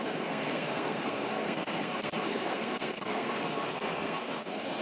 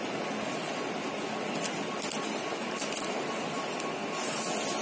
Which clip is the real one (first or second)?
second